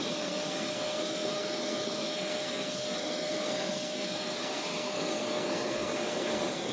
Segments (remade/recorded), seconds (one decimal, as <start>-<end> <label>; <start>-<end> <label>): 0.0-6.7 remade

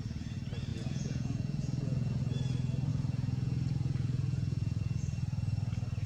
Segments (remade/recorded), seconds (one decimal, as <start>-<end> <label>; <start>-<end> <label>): 0.0-0.7 recorded; 0.7-2.2 remade; 2.2-2.9 recorded; 2.9-5.0 remade; 5.0-6.1 recorded

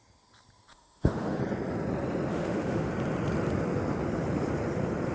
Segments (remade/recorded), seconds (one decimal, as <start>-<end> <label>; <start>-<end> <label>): 0.0-0.7 recorded; 0.7-1.4 remade; 1.4-2.3 recorded; 2.3-2.9 remade; 2.9-5.1 recorded

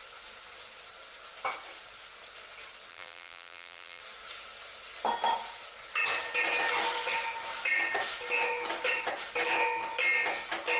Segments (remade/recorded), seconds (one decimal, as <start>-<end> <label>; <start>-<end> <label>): 0.0-2.9 recorded; 2.9-4.0 remade; 4.0-10.8 recorded

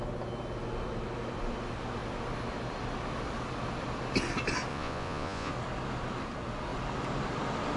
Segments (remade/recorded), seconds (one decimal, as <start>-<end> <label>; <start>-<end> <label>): 0.0-4.7 recorded; 4.7-5.5 remade; 5.5-7.8 recorded

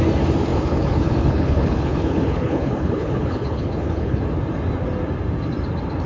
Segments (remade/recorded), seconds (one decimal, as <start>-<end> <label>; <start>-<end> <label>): 0.0-0.5 recorded; 0.5-4.2 remade; 4.2-6.1 recorded

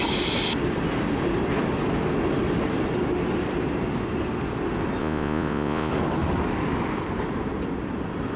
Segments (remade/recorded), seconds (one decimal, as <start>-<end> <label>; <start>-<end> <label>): 0.0-5.0 recorded; 5.0-5.9 remade; 5.9-8.4 recorded